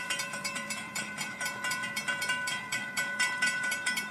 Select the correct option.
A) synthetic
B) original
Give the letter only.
A